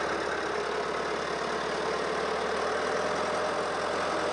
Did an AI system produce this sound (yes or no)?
no